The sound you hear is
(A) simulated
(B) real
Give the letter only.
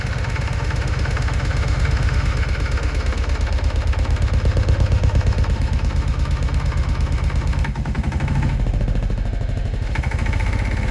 A